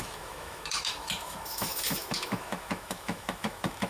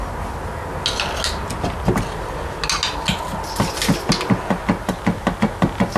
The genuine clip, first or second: second